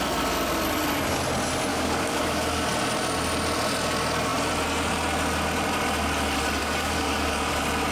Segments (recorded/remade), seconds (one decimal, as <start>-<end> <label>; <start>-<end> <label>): 0.0-1.7 recorded; 1.7-2.7 remade; 2.7-6.6 recorded; 6.6-7.5 remade; 7.5-7.9 recorded